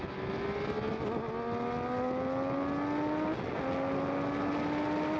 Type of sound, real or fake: real